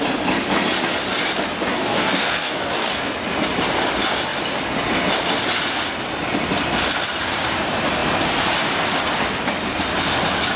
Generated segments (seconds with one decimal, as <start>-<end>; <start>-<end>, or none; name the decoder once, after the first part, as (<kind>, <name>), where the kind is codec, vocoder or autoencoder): 1.7-2.9 (codec, DAC)